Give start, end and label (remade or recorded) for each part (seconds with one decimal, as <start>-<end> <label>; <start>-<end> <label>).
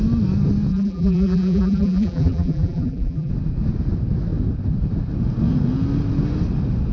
0.0-0.7 recorded; 0.7-3.3 remade; 3.3-6.9 recorded